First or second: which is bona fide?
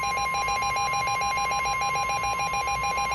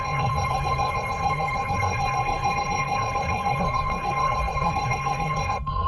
first